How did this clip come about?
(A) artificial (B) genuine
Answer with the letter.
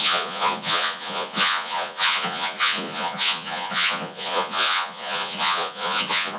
A